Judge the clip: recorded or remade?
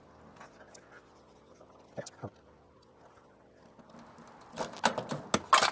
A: recorded